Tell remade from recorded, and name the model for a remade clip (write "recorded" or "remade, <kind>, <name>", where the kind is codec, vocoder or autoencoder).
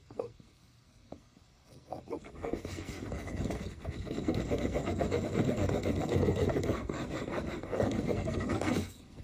remade, codec, SNAC